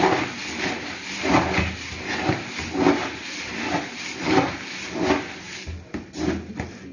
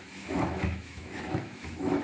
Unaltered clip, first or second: first